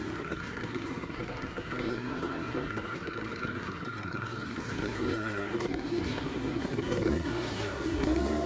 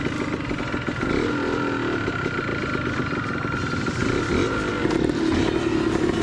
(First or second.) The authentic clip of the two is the second